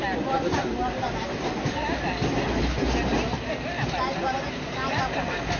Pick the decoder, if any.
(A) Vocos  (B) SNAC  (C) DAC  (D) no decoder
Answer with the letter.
D